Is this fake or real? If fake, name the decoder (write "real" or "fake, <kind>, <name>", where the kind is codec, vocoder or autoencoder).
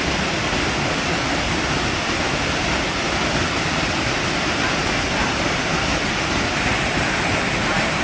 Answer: fake, vocoder, BigVGAN v2